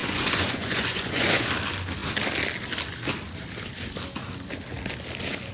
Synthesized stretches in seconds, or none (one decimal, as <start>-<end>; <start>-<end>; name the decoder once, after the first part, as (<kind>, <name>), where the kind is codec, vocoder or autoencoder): 0.0-1.5 (vocoder, Vocos)

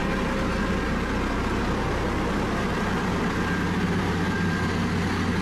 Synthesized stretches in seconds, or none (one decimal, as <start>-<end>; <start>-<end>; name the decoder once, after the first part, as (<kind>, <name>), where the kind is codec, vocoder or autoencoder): none

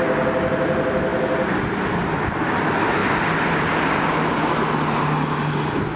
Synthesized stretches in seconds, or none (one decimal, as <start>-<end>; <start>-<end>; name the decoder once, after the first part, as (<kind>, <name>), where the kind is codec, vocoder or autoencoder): 3.0-3.7 (vocoder, BigVGAN v2)

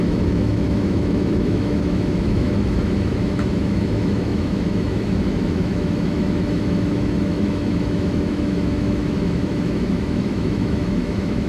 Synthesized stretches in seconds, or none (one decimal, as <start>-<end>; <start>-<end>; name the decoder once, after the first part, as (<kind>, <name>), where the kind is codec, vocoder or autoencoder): 0.0-11.5 (autoencoder, DAC-VAE)

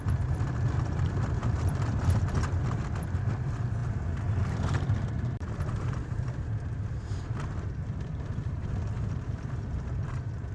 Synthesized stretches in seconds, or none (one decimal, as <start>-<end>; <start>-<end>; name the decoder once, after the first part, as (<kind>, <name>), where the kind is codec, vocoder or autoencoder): 0.0-10.5 (vocoder, BigVGAN v2)

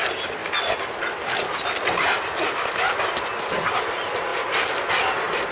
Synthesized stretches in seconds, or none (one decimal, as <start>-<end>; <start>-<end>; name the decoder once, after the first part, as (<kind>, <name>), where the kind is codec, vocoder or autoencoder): none

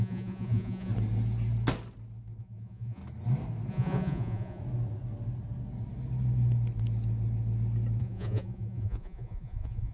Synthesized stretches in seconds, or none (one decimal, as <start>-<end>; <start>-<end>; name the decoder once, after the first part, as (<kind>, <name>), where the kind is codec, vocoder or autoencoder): 0.0-0.9 (vocoder, Vocos); 2.4-3.0; 3.7-4.6; 8.0-9.9